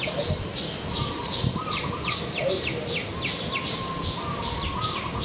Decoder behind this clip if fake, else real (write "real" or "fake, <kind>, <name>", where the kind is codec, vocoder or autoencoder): real